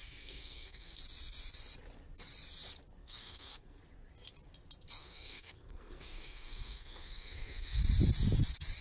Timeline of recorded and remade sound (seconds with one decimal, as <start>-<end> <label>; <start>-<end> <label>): 0.0-1.0 remade; 1.0-3.0 recorded; 3.0-3.8 remade; 3.8-5.0 recorded; 5.0-7.8 remade; 7.8-8.8 recorded